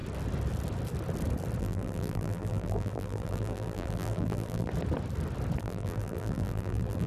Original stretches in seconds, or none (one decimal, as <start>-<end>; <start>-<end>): 0.0-1.6; 4.7-5.6